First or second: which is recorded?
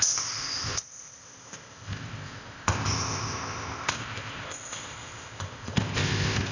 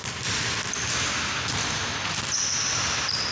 second